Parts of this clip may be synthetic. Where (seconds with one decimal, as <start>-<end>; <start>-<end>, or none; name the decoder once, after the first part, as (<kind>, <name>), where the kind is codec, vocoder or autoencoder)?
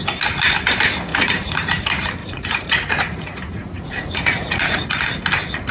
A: 1.1-1.7 (vocoder, Vocos); 2.2-5.1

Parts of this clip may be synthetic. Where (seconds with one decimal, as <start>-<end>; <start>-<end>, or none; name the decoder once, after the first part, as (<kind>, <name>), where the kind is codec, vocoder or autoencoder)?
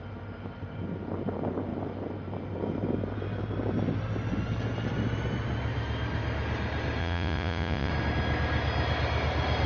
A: 7.0-7.9 (vocoder, Vocos)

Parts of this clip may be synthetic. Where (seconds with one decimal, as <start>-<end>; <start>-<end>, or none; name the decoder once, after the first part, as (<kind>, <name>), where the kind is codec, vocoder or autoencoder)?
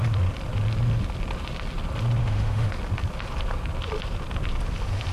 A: 2.2-2.7 (autoencoder, DAC-VAE)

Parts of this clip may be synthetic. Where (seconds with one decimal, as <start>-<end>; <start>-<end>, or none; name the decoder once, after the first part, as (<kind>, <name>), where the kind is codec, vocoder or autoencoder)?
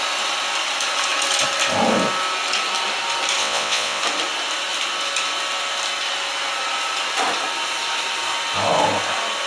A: 3.4-4.0 (vocoder, WaveNeXt)